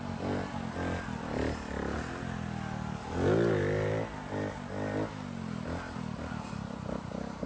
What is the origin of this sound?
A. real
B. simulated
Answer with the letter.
A